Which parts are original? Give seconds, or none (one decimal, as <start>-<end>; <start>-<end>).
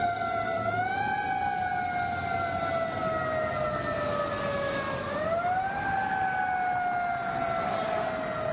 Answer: 0.0-8.5